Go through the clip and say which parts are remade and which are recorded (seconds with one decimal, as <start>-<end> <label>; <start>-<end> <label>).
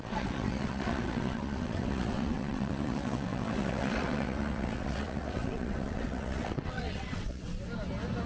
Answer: 0.0-7.5 remade; 7.5-8.3 recorded